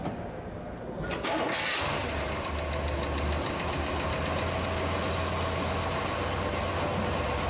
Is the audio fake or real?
real